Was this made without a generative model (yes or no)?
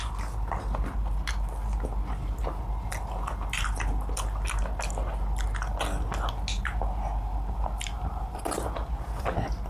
yes